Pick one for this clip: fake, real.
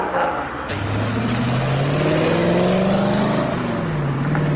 real